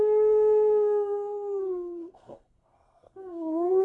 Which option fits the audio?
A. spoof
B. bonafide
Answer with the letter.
A